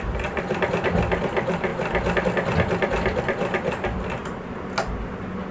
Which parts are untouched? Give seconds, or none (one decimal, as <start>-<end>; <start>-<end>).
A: 0.0-5.5